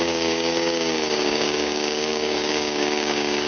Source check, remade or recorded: remade